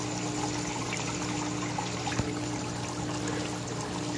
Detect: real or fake real